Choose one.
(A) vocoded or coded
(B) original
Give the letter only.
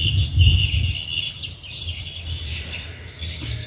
B